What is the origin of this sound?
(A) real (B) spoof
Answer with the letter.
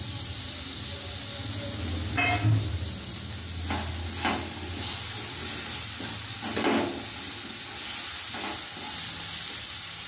A